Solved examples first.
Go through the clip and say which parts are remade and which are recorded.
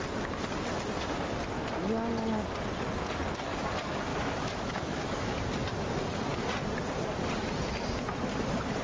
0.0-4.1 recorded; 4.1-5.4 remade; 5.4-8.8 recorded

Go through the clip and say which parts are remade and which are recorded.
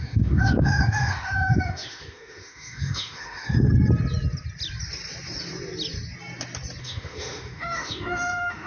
0.0-3.7 remade; 3.7-6.8 recorded; 6.8-8.7 remade